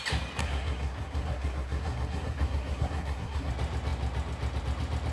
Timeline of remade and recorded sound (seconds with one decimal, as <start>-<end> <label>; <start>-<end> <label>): 0.0-0.4 recorded; 0.4-3.5 remade; 3.5-5.1 recorded